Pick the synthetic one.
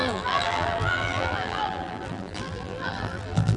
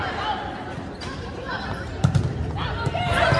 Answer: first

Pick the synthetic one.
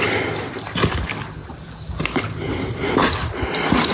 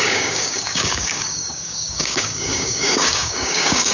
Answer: second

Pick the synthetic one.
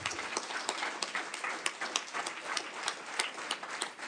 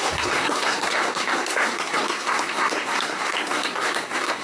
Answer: second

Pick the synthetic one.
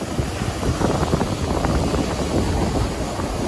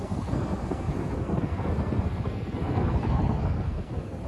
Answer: second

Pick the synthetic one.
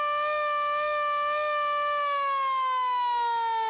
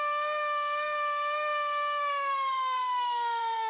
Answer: second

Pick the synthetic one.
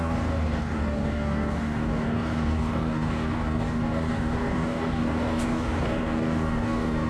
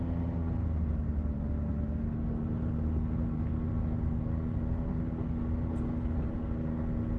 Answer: first